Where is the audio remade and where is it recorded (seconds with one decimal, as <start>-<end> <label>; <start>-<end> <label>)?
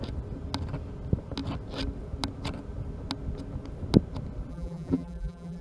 0.0-4.5 recorded; 4.5-5.6 remade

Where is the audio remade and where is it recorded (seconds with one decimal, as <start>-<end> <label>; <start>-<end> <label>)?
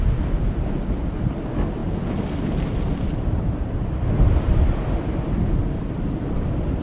0.0-6.8 recorded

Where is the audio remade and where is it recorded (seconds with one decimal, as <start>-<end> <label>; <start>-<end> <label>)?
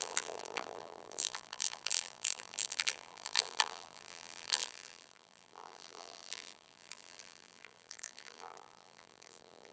0.0-9.7 remade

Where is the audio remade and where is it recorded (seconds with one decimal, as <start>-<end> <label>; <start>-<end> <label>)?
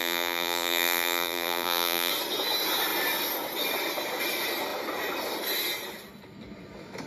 0.0-2.1 remade; 2.1-7.1 recorded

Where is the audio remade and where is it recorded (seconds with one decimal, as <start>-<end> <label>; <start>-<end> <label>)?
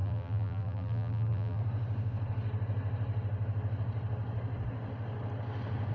0.0-1.6 remade; 1.6-5.9 recorded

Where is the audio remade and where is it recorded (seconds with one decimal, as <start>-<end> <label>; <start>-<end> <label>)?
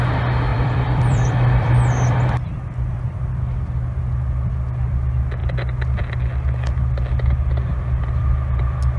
0.0-0.5 recorded; 0.5-3.3 remade; 3.3-9.0 recorded